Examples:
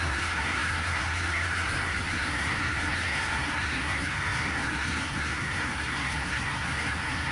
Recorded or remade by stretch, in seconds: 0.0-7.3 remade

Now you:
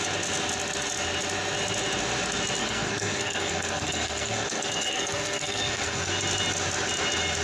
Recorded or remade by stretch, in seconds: 0.0-2.6 recorded; 2.6-6.1 remade; 6.1-7.4 recorded

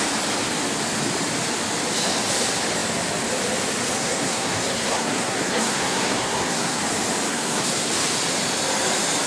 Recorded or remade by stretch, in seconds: 0.0-4.0 recorded; 4.0-6.8 remade; 6.8-7.3 recorded; 7.3-7.9 remade; 7.9-9.3 recorded